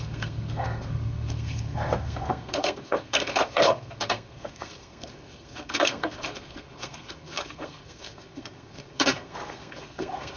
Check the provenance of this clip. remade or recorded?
remade